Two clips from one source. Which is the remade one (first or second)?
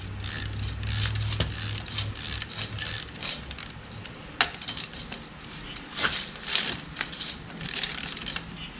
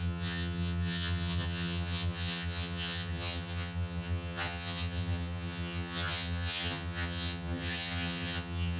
second